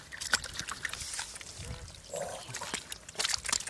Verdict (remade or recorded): recorded